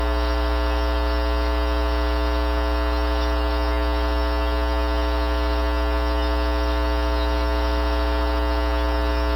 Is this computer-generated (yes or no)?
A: no